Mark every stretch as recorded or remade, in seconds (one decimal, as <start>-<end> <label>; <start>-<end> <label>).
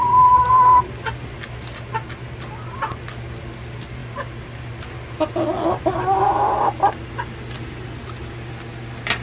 0.0-9.2 recorded